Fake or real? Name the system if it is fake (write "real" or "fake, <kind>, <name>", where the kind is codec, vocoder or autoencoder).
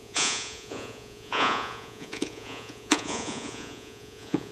fake, vocoder, Vocos